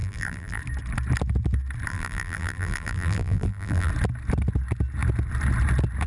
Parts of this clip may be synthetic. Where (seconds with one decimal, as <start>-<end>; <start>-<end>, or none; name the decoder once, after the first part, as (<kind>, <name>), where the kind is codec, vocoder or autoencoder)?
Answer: 0.0-0.6 (vocoder, BigVGAN v2); 1.9-3.9